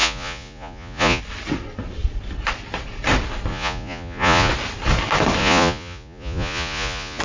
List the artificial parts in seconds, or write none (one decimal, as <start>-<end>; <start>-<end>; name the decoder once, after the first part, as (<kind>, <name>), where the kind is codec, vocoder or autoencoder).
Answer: 0.0-1.2 (vocoder, Vocos); 3.5-4.5; 5.4-7.2